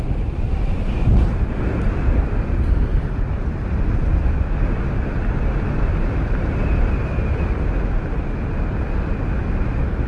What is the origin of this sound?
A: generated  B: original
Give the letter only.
B